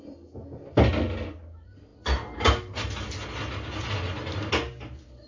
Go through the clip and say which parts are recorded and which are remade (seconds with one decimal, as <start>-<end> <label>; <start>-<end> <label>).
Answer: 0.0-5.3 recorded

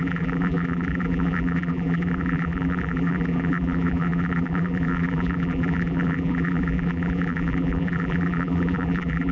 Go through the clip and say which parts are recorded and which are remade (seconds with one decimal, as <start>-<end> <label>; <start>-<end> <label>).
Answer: 0.0-9.3 remade

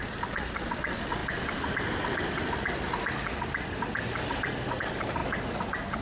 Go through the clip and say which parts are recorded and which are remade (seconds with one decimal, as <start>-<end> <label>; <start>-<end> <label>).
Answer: 0.0-1.2 remade; 1.2-4.8 recorded; 4.8-5.2 remade; 5.2-6.0 recorded

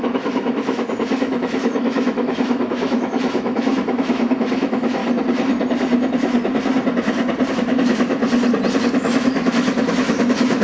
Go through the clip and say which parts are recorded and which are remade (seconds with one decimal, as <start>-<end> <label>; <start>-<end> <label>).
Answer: 0.0-5.0 remade; 5.0-7.5 recorded; 7.5-8.2 remade; 8.2-8.8 recorded; 8.8-10.6 remade